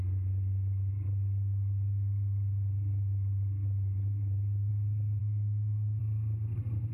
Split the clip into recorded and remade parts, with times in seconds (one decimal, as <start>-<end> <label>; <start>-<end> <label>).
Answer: 0.0-5.2 recorded; 5.2-6.0 remade; 6.0-6.9 recorded